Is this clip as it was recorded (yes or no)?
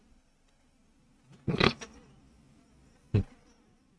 yes